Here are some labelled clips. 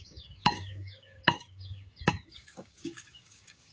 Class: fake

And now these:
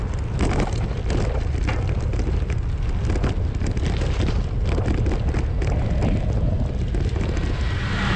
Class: real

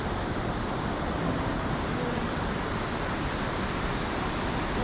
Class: real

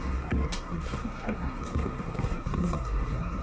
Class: fake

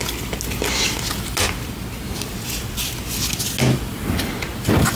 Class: real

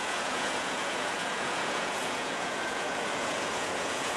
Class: fake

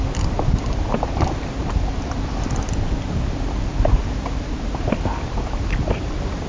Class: real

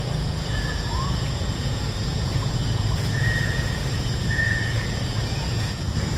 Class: fake